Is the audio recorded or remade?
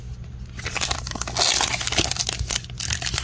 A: recorded